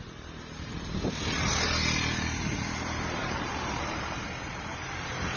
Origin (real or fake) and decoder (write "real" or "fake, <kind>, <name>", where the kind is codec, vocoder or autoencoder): fake, vocoder, BigVGAN v2